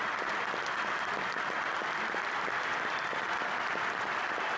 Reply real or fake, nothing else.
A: real